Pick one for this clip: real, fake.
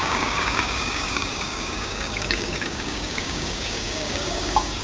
fake